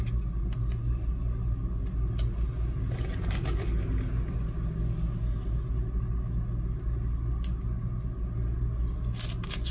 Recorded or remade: recorded